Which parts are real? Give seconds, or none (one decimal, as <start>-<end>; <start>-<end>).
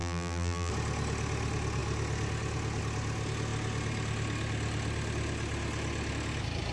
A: 0.7-6.7